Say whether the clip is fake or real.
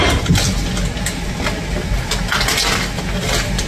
real